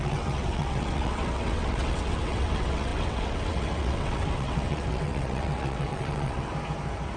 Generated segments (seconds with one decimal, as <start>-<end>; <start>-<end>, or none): 0.0-6.5